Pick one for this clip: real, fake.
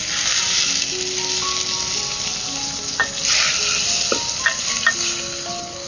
real